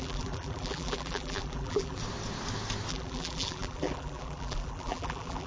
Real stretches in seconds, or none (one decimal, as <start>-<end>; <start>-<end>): 2.0-2.9